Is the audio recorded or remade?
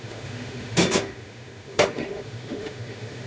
remade